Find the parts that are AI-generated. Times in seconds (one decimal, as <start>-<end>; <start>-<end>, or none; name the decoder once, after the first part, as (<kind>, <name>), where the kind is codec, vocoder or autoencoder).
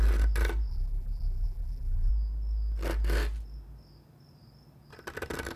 0.7-2.1 (vocoder, BigVGAN v2)